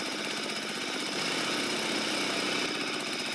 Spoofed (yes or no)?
no